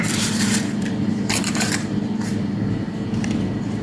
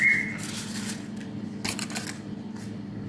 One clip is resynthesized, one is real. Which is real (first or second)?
second